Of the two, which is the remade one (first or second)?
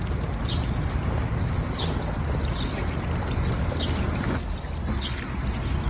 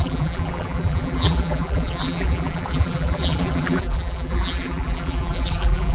second